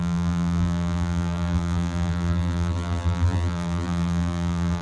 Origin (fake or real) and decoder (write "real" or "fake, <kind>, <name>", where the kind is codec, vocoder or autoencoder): fake, vocoder, BigVGAN v2